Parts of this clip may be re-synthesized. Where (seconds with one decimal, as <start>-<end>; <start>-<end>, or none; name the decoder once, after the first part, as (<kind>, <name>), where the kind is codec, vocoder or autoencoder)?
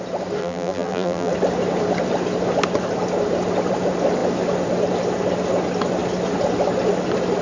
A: 0.4-1.3 (vocoder, BigVGAN v2)